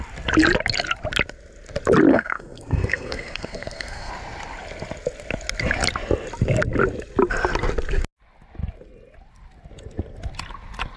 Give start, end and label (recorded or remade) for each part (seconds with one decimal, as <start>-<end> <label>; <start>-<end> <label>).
0.0-2.1 recorded; 2.1-4.1 remade; 4.1-11.0 recorded